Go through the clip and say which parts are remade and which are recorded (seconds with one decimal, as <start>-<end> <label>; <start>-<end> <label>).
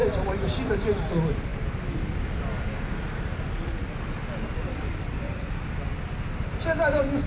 0.0-7.3 recorded